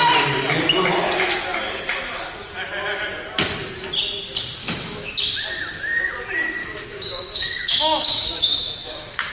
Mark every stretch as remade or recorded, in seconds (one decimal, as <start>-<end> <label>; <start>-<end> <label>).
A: 0.0-4.6 recorded; 4.6-5.1 remade; 5.1-6.6 recorded; 6.6-9.3 remade